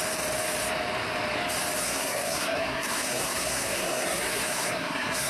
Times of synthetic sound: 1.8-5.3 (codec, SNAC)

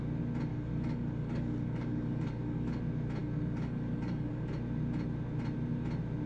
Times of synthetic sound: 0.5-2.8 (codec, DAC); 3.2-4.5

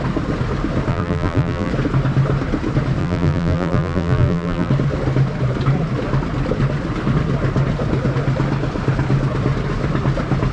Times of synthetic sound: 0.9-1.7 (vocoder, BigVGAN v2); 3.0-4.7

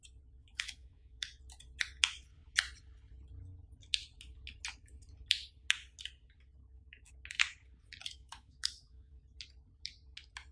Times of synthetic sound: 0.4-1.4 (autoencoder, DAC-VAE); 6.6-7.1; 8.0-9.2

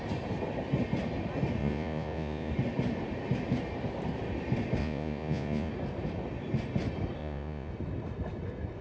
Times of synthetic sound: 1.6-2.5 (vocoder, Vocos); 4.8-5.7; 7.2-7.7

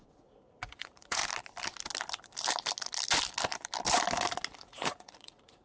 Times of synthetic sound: 0.0-1.2 (vocoder, Vocos); 4.6-5.6

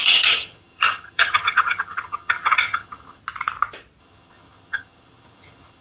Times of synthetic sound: 0.0-3.2 (vocoder, HiFi-GAN); 4.0-5.8